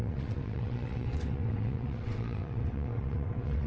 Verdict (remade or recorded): remade